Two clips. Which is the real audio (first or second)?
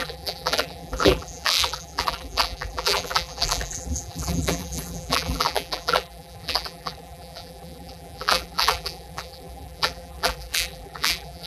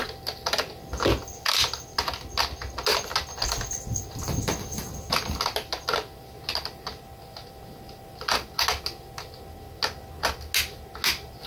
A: second